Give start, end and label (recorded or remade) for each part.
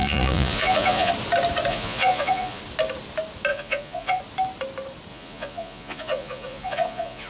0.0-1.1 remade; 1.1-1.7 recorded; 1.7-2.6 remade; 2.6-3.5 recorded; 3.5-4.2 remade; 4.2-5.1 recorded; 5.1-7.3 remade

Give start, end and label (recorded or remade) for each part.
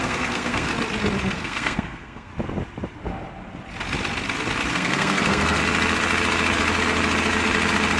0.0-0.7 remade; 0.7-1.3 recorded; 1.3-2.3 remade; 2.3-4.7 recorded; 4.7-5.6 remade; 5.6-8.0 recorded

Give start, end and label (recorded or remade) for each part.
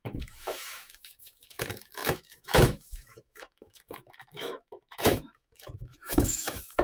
0.0-6.8 remade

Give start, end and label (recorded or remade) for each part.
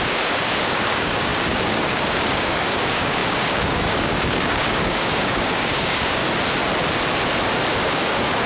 0.0-6.2 remade; 6.2-7.8 recorded; 7.8-8.5 remade